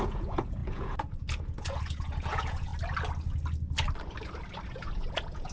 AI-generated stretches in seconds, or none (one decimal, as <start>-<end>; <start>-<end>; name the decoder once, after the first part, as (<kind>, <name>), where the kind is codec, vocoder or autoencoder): 0.0-2.7 (vocoder, Vocos); 4.7-5.5